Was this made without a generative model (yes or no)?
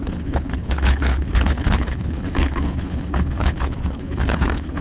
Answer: no